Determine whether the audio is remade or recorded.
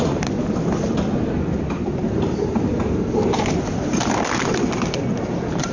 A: recorded